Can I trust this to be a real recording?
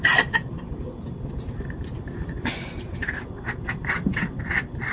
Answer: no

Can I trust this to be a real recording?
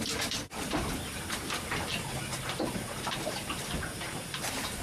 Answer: no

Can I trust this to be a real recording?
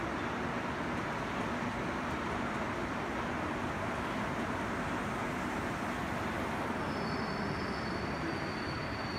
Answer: yes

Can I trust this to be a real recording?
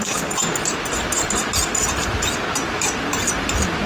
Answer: yes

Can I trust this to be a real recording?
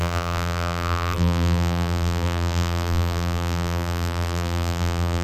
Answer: no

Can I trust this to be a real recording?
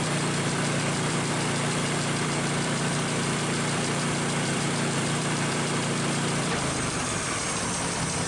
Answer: no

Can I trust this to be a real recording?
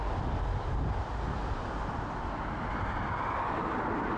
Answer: yes